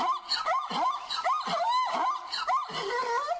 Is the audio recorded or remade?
recorded